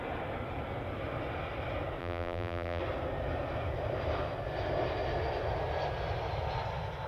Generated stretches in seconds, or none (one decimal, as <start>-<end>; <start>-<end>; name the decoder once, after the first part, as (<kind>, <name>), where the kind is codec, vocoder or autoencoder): 2.0-2.8 (vocoder, BigVGAN v2)